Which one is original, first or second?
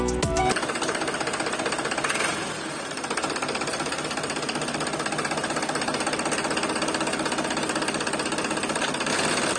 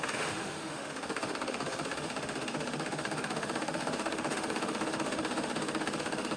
first